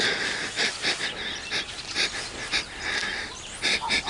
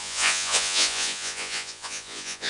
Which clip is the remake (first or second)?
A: second